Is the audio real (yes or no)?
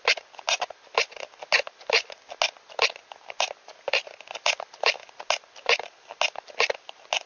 yes